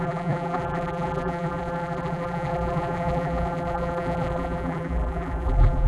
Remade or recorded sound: remade